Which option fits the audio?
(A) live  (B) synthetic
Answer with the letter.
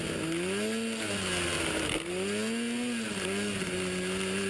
A